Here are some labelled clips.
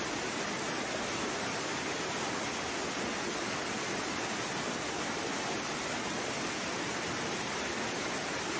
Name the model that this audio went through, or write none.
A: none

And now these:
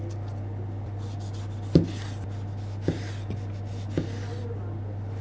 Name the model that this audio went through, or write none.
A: none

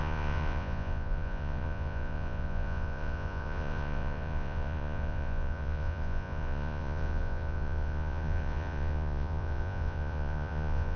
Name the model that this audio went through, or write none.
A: vocoder, Vocos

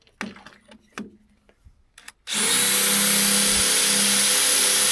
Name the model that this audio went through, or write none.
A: none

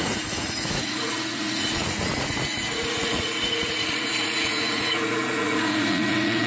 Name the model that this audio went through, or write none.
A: vocoder, Vocos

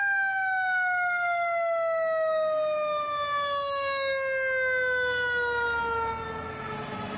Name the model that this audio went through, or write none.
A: none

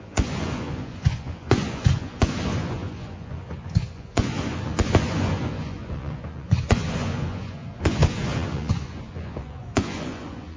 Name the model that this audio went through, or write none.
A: vocoder, Vocos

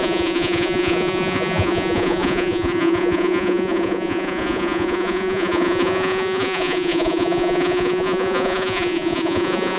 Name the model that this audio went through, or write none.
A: vocoder, Vocos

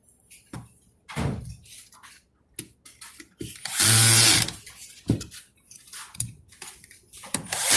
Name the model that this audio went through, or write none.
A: none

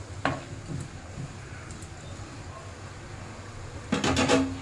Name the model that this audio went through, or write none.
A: none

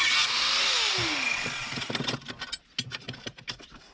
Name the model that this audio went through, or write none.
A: none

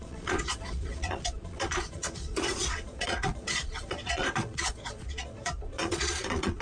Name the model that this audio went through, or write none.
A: vocoder, Vocos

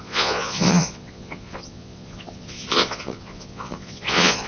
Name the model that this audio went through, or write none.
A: vocoder, Vocos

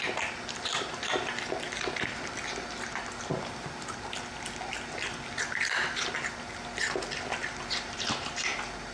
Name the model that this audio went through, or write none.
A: none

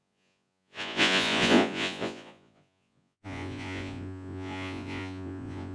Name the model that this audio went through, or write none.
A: vocoder, Vocos